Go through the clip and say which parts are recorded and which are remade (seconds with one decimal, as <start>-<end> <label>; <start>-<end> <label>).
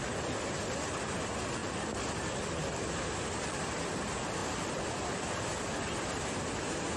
0.0-7.0 recorded